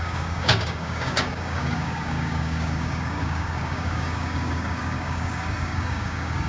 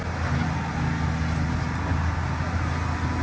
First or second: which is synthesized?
first